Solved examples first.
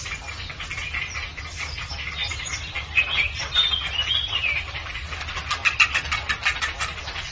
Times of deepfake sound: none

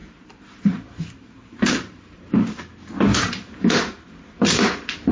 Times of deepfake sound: 0.0-2.6 (vocoder, BigVGAN v2); 3.1-3.7

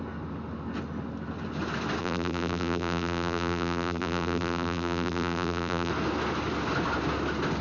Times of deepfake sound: 2.0-5.9 (vocoder, BigVGAN v2)

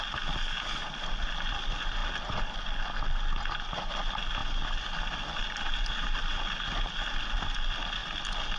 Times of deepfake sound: none

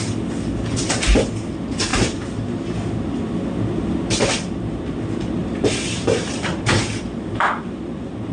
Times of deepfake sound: 1.9-2.6 (vocoder, BigVGAN v2); 5.4-6.8

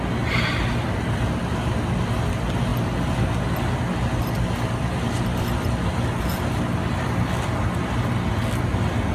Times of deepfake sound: none

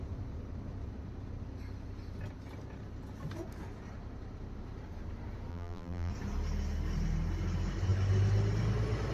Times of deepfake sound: 5.5-6.1 (vocoder, BigVGAN v2)